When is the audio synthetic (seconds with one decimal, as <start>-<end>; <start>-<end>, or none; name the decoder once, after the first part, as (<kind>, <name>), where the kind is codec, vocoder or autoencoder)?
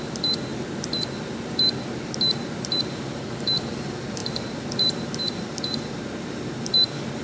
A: 0.0-7.2 (vocoder, BigVGAN v2)